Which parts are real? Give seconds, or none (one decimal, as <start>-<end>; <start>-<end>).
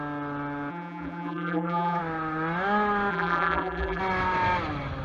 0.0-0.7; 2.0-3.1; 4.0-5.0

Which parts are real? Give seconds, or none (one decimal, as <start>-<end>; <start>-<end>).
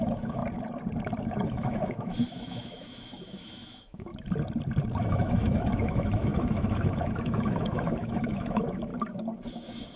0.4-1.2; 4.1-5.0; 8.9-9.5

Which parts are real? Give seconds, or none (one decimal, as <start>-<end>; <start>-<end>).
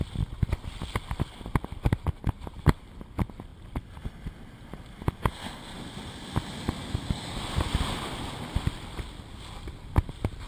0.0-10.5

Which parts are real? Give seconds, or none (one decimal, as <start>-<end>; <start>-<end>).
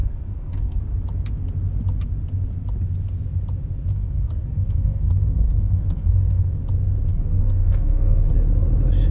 0.8-3.9; 6.6-7.1; 8.3-9.1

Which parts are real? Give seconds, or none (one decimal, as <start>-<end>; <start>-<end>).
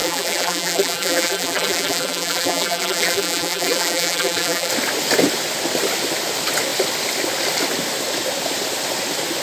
4.7-9.4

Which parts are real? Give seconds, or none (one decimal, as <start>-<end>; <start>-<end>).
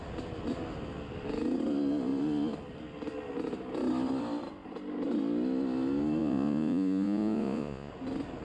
0.0-6.2; 7.9-8.4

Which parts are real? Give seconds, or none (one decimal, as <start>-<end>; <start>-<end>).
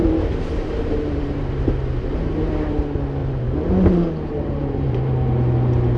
1.5-3.2; 5.0-6.0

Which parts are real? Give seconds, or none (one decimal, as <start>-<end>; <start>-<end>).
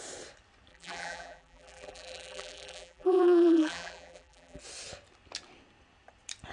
0.0-0.7; 4.6-6.5